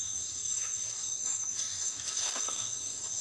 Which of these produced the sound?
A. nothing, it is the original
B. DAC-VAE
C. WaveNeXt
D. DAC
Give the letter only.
D